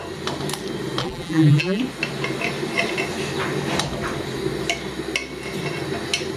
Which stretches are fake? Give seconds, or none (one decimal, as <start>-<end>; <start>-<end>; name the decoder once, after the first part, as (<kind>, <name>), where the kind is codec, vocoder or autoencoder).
1.0-1.8 (vocoder, BigVGAN v2)